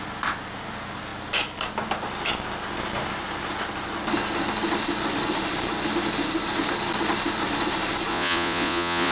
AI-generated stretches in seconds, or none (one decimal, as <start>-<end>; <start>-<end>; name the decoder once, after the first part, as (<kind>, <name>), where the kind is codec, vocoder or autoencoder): 8.1-9.1 (vocoder, Vocos)

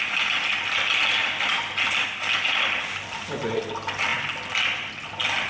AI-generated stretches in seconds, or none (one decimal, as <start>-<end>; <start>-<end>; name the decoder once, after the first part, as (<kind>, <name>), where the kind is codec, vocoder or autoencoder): none

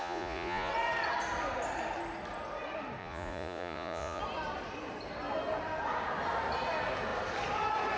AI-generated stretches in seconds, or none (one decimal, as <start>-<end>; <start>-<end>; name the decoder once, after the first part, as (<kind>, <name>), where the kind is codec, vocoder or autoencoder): 0.0-0.7 (vocoder, Vocos); 3.0-4.2

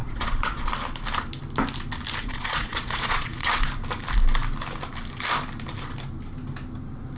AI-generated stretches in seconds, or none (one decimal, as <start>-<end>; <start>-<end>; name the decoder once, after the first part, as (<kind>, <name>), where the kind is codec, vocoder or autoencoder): 0.0-0.7 (vocoder, Vocos); 2.2-3.7

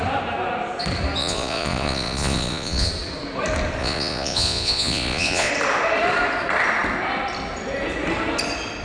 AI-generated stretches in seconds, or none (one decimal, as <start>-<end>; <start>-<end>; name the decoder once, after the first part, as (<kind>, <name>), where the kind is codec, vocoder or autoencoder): 1.2-2.9 (vocoder, Vocos); 3.8-5.5

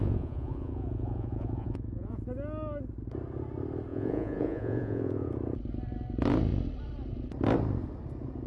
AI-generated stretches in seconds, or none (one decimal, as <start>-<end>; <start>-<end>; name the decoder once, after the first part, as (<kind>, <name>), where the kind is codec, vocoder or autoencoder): 0.0-2.2 (vocoder, Vocos); 3.9-5.3

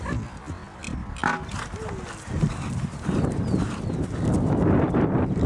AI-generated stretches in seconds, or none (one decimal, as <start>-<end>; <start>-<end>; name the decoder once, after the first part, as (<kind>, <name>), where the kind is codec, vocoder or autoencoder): none